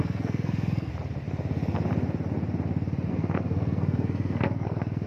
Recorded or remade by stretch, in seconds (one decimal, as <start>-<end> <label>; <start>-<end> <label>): 0.0-0.9 remade; 0.9-3.1 recorded; 3.1-5.1 remade

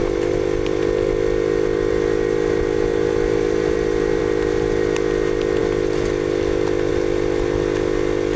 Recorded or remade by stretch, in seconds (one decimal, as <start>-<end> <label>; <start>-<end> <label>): 0.0-4.2 remade; 4.2-8.4 recorded

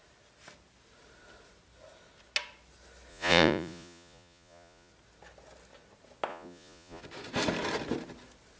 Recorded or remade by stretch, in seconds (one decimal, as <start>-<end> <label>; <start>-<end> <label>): 0.0-3.1 recorded; 3.1-4.9 remade; 4.9-6.3 recorded; 6.3-7.0 remade; 7.0-8.6 recorded

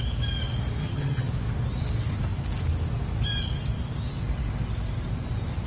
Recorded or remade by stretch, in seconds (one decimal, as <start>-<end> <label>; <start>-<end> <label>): 0.0-0.8 recorded; 0.8-1.3 remade; 1.3-5.7 recorded

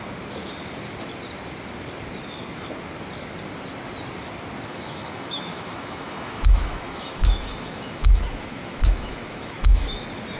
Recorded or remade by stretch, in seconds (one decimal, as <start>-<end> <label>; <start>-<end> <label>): 0.0-4.7 recorded; 4.7-10.0 remade; 10.0-10.4 recorded

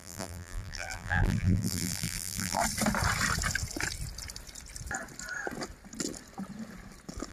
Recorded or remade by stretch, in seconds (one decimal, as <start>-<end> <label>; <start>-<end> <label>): 0.0-2.6 remade; 2.6-7.3 recorded